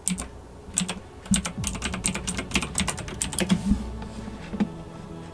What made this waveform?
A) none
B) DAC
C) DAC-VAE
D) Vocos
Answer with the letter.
A